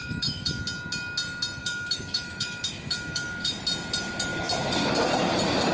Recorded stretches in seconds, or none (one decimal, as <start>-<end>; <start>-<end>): 0.6-1.6; 3.6-5.7